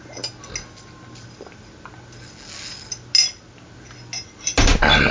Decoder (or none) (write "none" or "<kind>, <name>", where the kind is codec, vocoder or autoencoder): none